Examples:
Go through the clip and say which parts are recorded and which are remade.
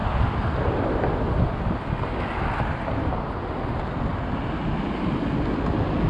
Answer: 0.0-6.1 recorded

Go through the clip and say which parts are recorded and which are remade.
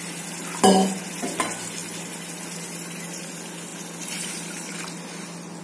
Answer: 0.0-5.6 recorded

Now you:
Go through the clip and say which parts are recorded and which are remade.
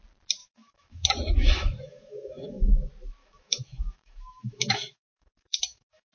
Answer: 0.0-0.4 recorded; 0.4-2.7 remade; 2.7-3.2 recorded; 3.2-6.1 remade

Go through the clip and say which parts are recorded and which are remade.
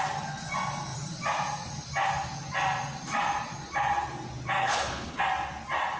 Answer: 0.0-4.6 recorded; 4.6-5.2 remade; 5.2-6.0 recorded